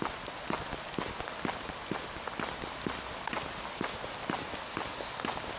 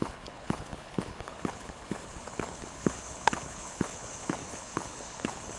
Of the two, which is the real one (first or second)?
first